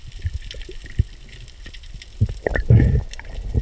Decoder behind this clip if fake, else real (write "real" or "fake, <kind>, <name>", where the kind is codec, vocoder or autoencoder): real